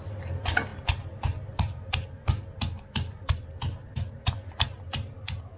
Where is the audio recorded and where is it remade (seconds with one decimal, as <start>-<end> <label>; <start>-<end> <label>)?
0.0-5.6 recorded